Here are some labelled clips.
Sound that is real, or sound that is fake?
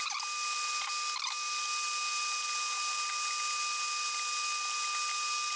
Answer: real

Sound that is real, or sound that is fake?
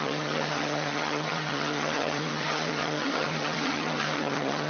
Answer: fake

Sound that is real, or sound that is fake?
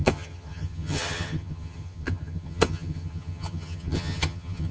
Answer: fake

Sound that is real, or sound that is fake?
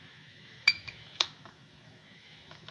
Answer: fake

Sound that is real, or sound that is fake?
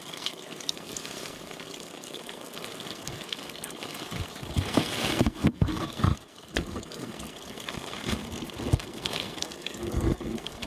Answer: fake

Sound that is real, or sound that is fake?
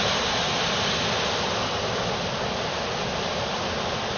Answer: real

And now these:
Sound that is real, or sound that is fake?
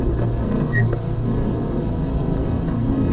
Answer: fake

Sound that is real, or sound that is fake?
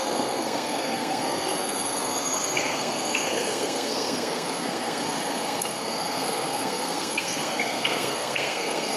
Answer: fake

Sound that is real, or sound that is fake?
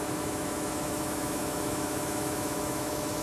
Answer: fake